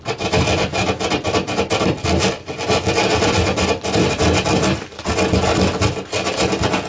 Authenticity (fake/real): real